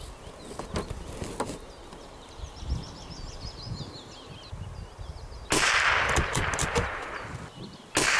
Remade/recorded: recorded